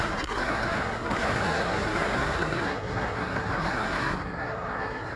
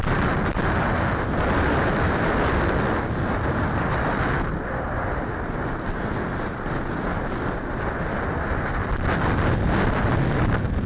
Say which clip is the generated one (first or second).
first